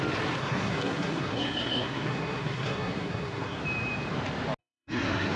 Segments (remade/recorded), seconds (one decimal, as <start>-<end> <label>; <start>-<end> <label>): 0.0-0.4 recorded; 0.4-3.6 remade; 3.6-4.6 recorded; 4.6-5.4 remade